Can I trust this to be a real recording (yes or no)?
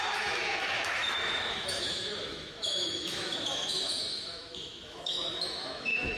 no